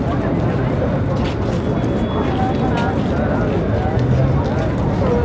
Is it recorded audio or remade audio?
recorded